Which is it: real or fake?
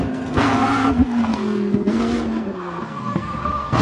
fake